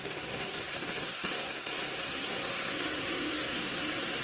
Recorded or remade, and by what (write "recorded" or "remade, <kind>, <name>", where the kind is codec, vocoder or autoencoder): remade, codec, SNAC